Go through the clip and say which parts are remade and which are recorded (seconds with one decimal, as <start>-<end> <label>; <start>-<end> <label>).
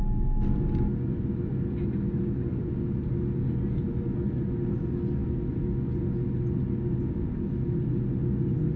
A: 0.0-8.8 recorded